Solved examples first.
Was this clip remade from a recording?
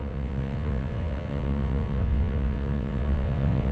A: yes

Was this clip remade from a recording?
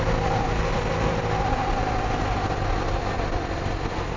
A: no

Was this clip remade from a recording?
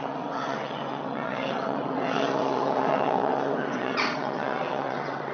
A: yes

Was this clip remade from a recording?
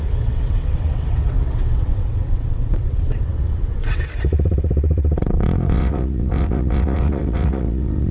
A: yes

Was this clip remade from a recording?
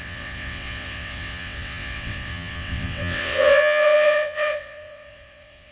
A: yes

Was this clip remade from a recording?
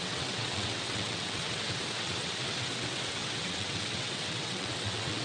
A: yes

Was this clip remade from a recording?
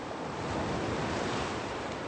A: no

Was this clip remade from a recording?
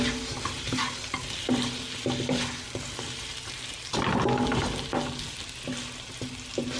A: no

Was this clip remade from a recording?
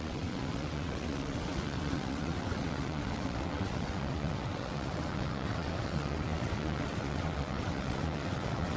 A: yes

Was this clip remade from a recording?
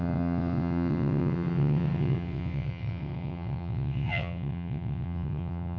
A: yes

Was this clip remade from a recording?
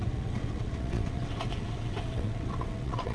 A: yes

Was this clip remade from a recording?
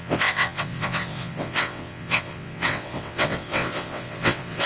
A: yes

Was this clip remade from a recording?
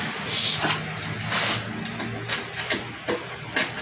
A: no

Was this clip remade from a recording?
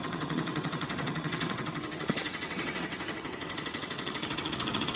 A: yes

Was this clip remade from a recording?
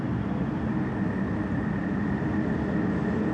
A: no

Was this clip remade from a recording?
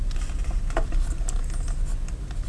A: no